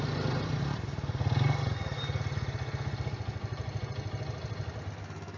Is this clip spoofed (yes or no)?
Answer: no